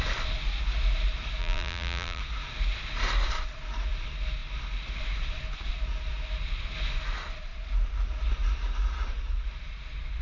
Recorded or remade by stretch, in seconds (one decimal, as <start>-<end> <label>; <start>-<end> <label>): 0.0-1.4 recorded; 1.4-2.2 remade; 2.2-10.2 recorded